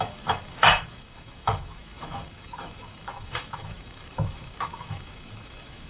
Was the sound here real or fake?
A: fake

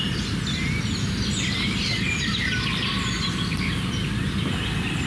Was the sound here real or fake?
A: real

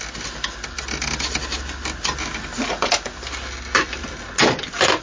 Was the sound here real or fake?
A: real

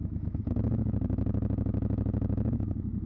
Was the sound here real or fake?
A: fake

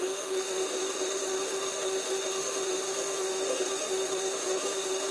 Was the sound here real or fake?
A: fake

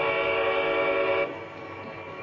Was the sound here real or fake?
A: real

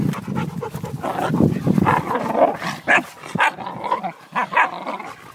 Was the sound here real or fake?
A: real